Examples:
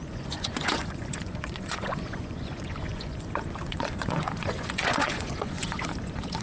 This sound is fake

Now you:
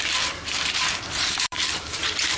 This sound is fake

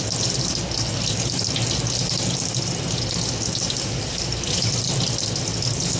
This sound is real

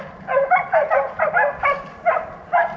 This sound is real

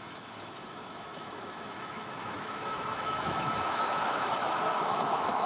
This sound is fake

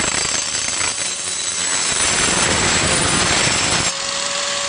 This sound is fake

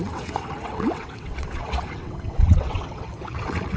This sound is fake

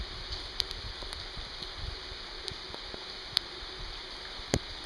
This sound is real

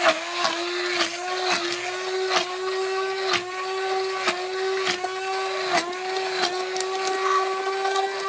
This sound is real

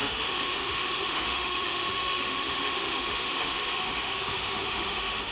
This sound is fake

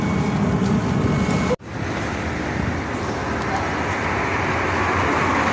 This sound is real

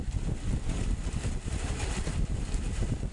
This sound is real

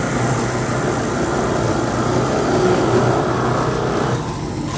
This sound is real